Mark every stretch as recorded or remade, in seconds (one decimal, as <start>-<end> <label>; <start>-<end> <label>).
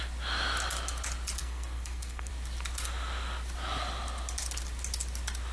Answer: 0.0-1.4 recorded; 1.4-2.3 remade; 2.3-5.5 recorded